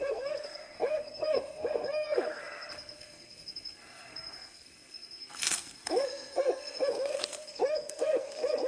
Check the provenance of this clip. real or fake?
fake